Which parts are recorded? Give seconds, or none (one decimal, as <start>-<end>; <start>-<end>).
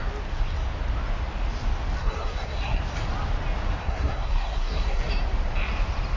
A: 0.0-2.0; 2.8-3.8; 5.1-6.2